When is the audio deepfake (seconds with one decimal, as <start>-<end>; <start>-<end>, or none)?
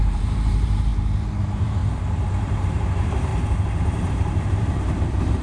0.0-0.9; 1.4-1.8; 2.3-3.3; 3.8-5.4